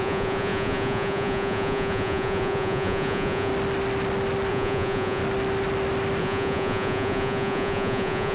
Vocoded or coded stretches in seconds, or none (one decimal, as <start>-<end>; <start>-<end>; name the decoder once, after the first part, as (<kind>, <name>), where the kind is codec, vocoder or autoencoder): 0.0-3.5 (vocoder, Vocos); 4.5-5.2; 6.2-8.3